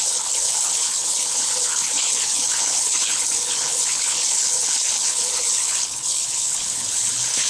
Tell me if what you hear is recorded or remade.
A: remade